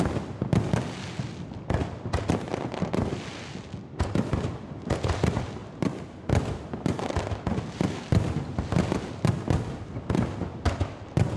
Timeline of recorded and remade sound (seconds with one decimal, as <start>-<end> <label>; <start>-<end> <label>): 0.0-11.4 recorded